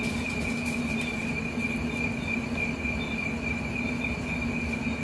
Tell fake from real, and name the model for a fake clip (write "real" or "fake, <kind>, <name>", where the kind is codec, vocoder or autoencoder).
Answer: real